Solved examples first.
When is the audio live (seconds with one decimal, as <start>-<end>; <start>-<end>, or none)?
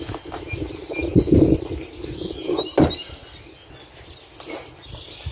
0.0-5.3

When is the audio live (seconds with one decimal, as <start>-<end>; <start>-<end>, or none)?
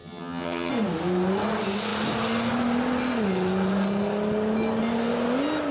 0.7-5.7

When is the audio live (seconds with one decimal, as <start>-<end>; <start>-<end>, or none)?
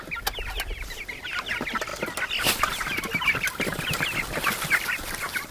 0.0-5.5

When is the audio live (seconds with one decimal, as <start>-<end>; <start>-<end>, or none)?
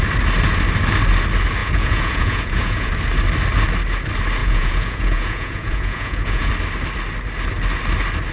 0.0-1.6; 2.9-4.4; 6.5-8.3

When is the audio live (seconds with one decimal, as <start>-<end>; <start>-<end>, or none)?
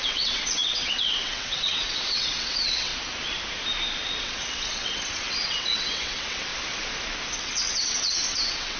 2.9-4.2; 6.5-7.3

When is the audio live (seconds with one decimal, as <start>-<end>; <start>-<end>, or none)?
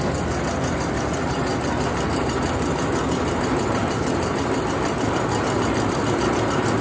0.0-6.8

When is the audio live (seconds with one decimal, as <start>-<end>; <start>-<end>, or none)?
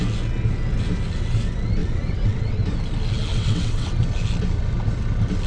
0.0-1.8; 2.6-3.3; 3.9-5.5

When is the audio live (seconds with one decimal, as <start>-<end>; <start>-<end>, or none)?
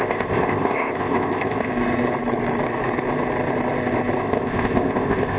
1.7-4.2